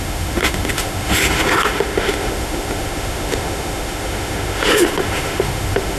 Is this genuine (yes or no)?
no